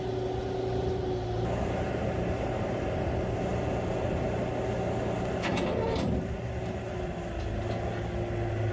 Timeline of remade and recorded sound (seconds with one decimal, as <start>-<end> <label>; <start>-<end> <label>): 0.0-8.7 recorded